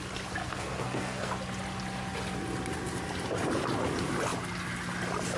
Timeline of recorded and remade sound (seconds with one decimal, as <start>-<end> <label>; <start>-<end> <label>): 0.0-0.4 recorded; 0.4-1.3 remade; 1.3-5.4 recorded